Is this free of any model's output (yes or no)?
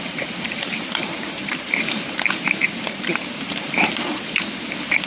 no